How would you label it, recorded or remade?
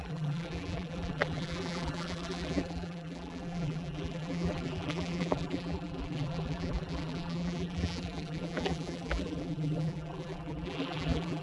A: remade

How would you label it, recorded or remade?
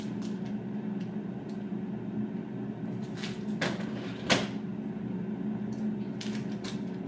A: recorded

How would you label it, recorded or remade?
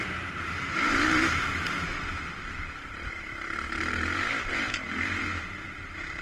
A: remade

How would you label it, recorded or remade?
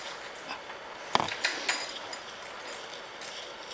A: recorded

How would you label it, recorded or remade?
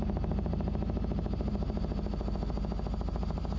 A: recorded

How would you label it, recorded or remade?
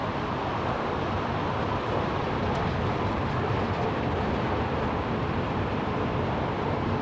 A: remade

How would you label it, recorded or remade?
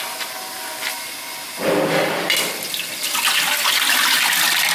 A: recorded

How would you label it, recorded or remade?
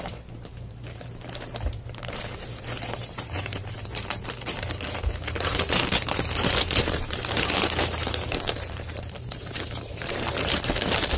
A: remade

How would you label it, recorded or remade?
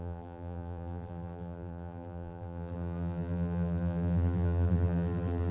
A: remade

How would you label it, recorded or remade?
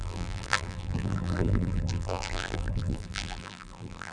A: remade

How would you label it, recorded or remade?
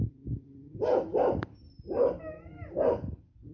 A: remade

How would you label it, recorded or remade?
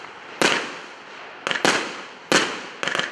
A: recorded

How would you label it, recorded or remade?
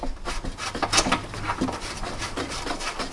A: remade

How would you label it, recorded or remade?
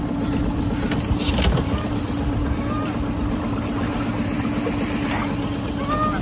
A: recorded